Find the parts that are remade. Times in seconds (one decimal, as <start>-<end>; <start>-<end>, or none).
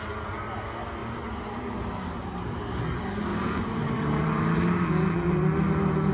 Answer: 1.0-1.6; 3.3-4.9